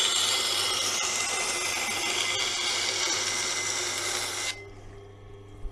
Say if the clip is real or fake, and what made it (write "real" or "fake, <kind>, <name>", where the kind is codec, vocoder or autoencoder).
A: real